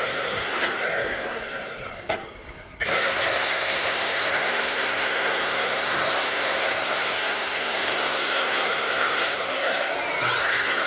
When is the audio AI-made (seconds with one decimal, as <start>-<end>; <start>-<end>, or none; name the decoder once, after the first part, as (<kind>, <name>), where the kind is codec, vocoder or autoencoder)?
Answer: 0.0-9.9 (codec, SNAC); 10.4-10.9